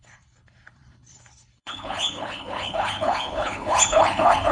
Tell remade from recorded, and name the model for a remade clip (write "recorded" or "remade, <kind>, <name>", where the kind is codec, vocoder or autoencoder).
remade, codec, HILCodec